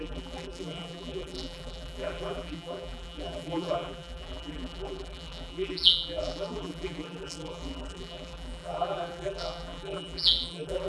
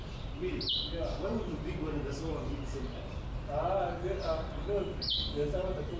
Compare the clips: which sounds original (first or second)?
second